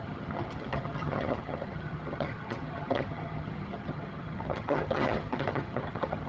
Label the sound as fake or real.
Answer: fake